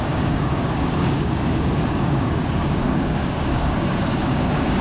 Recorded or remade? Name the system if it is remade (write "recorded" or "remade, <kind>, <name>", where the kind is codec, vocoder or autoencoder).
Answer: remade, codec, DAC